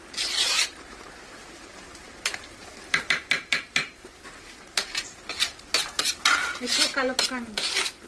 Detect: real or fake fake